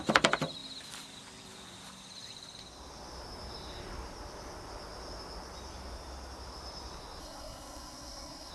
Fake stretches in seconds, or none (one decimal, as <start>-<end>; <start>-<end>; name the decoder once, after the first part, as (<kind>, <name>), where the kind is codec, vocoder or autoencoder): 7.2-8.5 (codec, SNAC)